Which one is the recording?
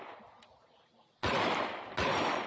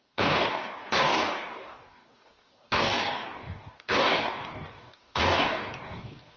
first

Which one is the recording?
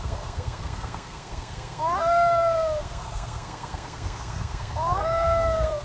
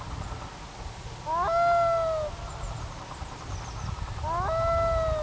second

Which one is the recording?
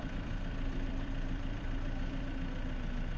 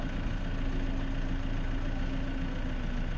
second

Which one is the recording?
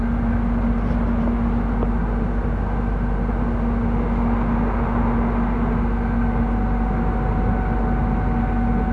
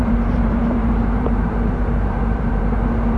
first